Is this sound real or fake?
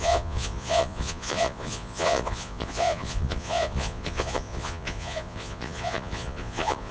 fake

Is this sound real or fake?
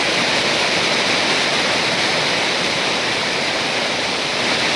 real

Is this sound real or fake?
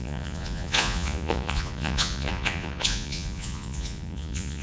fake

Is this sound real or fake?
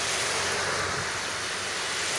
real